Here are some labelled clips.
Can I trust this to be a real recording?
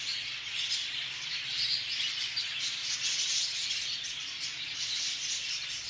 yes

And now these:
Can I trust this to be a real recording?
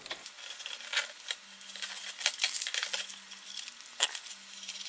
yes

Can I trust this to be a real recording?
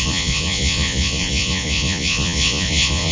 no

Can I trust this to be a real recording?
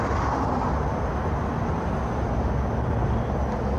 yes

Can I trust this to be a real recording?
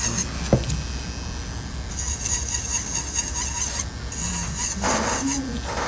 yes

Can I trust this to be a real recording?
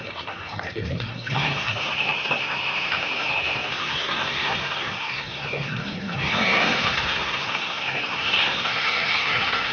no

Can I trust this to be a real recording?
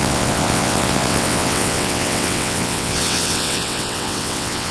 no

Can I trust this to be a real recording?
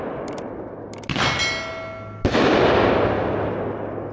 yes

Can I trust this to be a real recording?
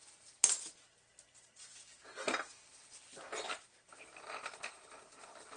yes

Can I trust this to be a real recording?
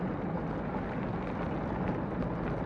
yes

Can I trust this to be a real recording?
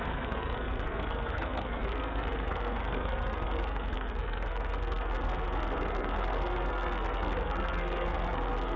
no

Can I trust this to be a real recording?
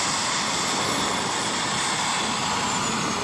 yes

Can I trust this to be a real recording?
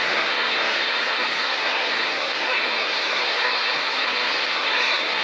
no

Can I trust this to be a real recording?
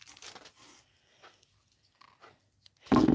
yes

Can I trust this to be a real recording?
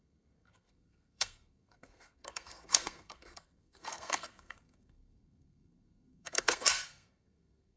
no